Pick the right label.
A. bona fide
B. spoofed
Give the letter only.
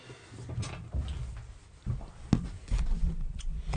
A